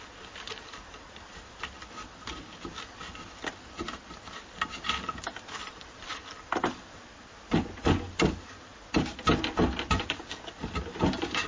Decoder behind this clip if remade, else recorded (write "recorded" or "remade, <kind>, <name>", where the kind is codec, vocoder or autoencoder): recorded